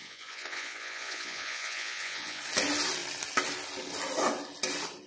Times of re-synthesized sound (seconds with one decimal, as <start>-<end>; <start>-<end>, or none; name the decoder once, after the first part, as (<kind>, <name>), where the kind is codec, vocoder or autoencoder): 0.0-2.4 (vocoder, Vocos)